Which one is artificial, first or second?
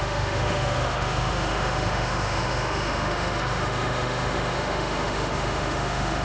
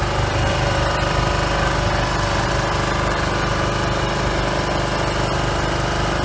first